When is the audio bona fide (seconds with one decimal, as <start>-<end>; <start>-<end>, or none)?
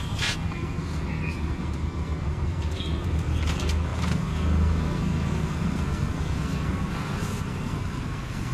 none